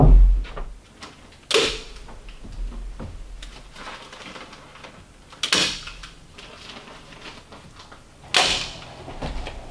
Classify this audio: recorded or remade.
recorded